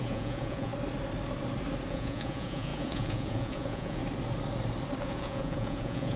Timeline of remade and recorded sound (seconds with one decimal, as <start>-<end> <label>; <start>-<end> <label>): 0.0-0.7 remade; 0.7-1.9 recorded; 1.9-4.0 remade; 4.0-5.0 recorded; 5.0-6.2 remade